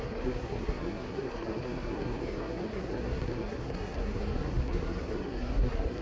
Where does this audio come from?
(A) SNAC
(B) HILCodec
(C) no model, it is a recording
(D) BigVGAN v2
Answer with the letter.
A